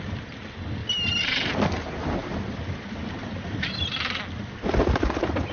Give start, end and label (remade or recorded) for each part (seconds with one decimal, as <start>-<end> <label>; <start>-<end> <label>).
0.0-5.5 recorded